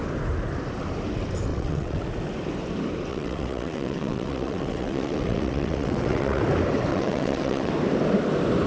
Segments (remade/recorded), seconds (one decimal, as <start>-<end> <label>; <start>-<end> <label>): 0.0-1.5 recorded; 1.5-2.0 remade; 2.0-3.1 recorded; 3.1-6.4 remade; 6.4-6.9 recorded; 6.9-7.7 remade; 7.7-8.7 recorded

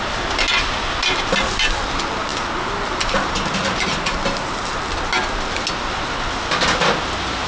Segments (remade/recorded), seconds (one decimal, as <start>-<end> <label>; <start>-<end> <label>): 0.0-7.5 recorded

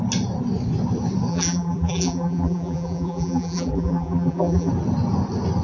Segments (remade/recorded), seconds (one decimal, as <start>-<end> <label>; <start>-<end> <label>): 0.0-1.3 recorded; 1.3-4.7 remade; 4.7-5.6 recorded